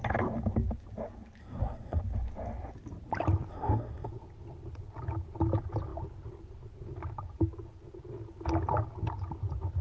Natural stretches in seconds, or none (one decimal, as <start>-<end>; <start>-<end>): 0.0-1.4; 2.0-3.5; 4.1-9.8